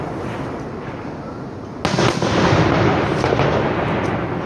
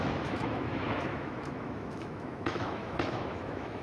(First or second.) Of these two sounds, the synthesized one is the second